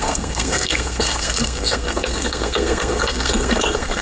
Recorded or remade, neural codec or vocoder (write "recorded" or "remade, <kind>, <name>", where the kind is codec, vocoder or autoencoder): remade, codec, SNAC